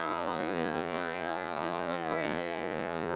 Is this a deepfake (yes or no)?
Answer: yes